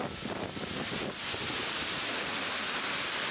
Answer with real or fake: real